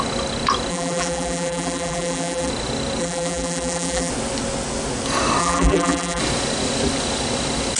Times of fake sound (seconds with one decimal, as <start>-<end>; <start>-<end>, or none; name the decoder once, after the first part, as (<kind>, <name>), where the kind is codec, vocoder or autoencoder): 0.7-2.5 (vocoder, BigVGAN v2); 3.0-4.1; 5.4-6.2

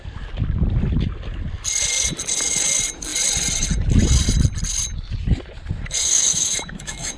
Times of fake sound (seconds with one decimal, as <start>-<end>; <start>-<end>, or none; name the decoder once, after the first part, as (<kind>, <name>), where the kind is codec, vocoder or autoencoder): 6.0-7.2 (autoencoder, DAC-VAE)

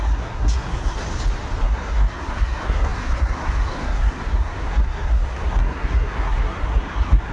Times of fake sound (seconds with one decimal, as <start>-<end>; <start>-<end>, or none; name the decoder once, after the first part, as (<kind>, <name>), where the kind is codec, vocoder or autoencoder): 0.0-1.0 (codec, SNAC); 1.6-7.3

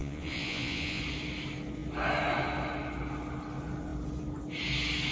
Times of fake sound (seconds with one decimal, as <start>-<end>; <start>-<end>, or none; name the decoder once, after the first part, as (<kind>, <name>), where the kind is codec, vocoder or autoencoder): 0.0-1.0 (vocoder, Vocos)

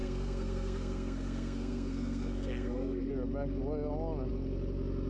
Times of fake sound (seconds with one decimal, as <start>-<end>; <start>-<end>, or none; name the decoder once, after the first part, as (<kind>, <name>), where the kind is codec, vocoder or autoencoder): 0.0-3.1 (codec, SNAC)

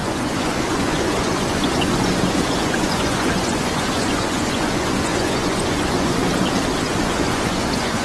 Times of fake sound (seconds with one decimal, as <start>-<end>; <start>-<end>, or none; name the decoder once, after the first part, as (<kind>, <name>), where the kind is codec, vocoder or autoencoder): 0.0-6.2 (vocoder, Vocos); 6.8-8.0